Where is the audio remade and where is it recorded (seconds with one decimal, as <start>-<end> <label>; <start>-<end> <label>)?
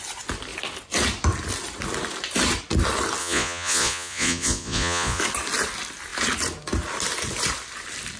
0.0-3.2 recorded; 3.2-5.2 remade; 5.2-8.2 recorded